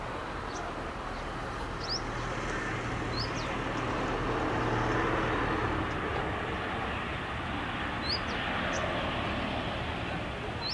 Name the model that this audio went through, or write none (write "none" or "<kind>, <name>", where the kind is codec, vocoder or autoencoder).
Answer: none